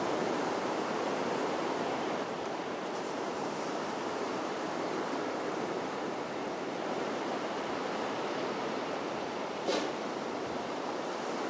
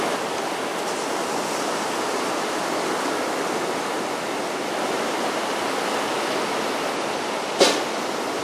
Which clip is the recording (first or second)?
second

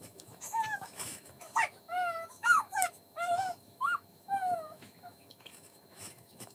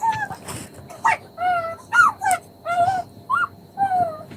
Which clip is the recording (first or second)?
second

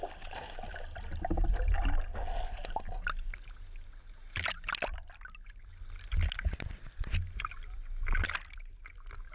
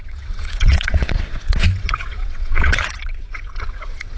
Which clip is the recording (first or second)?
first